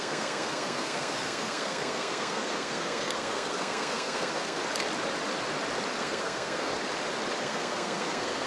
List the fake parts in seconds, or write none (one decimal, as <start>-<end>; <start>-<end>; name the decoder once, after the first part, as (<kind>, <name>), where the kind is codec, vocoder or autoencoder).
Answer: 0.0-4.6 (codec, SNAC); 6.0-6.7; 7.4-8.5